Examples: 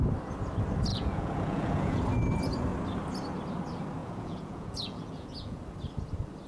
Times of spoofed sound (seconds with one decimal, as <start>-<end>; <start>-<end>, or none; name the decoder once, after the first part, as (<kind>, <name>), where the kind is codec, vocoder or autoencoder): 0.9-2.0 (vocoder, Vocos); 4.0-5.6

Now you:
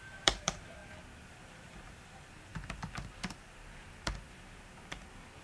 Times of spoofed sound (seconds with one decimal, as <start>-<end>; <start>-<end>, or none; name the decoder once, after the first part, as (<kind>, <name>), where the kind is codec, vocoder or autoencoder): 0.0-0.8 (vocoder, BigVGAN v2); 1.3-2.5

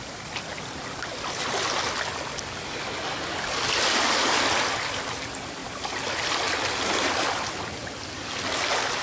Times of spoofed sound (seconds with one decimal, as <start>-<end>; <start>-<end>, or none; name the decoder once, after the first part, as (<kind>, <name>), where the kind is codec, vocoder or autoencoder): none

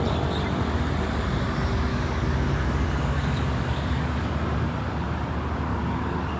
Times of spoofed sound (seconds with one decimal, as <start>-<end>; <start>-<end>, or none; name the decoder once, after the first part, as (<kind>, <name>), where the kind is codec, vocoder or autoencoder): 1.9-4.3 (codec, DAC); 5.7-6.4

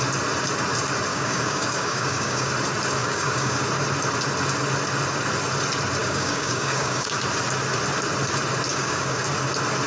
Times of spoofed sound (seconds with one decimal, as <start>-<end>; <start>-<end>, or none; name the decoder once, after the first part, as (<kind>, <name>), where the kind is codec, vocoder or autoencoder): 1.1-2.5 (codec, DAC); 3.0-3.6; 6.0-7.2; 8.7-9.2

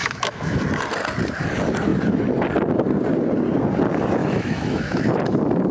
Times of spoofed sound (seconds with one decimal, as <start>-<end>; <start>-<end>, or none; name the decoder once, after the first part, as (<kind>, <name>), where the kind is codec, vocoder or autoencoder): 0.0-0.6 (autoencoder, DAC-VAE); 4.2-5.0

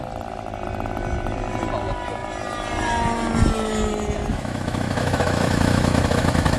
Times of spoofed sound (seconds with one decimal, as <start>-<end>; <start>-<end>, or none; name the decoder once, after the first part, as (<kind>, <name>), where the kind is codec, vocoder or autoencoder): 4.3-6.6 (autoencoder, DAC-VAE)

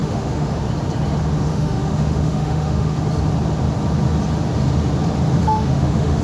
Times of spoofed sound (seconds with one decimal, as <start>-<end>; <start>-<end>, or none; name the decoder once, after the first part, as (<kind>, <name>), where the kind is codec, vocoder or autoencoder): 0.0-0.6 (autoencoder, DAC-VAE); 1.5-3.0; 5.4-6.2